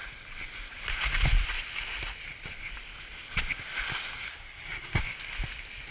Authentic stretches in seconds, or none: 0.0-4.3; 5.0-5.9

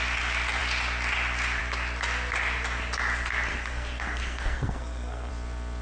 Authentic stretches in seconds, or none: 0.0-3.5; 5.3-5.8

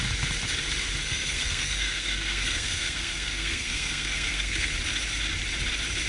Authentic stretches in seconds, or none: 0.0-1.0; 4.7-6.1

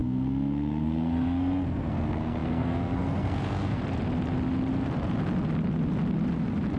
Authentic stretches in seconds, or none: 3.8-6.8

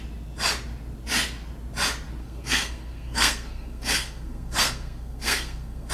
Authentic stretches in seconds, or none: 0.0-2.2